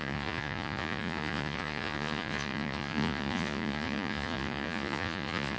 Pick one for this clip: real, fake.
fake